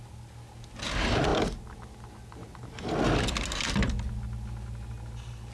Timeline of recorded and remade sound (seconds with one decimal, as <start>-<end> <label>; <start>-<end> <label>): 0.0-5.5 recorded